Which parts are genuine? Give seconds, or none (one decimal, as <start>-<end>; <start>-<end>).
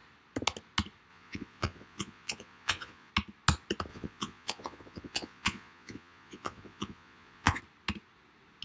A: 0.0-1.1; 3.1-3.9; 7.6-8.6